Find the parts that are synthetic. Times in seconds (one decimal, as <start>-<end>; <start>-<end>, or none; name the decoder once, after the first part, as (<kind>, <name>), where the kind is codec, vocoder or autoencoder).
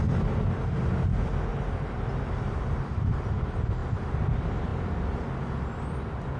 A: 1.5-3.4 (vocoder, BigVGAN v2)